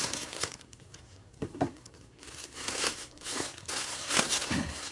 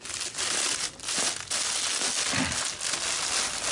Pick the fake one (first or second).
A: first